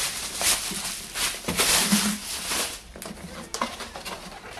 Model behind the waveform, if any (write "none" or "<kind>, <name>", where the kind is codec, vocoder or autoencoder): none